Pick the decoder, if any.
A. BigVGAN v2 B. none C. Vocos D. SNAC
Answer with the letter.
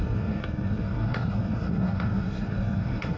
D